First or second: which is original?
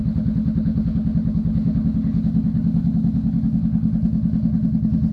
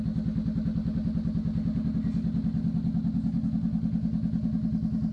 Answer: second